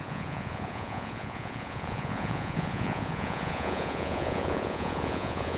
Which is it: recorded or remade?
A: remade